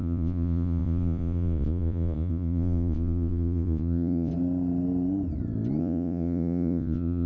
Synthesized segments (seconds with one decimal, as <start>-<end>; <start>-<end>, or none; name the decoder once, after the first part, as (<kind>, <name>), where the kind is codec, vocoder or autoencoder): 0.0-4.3 (vocoder, Vocos); 5.8-7.3